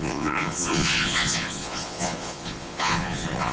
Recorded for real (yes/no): no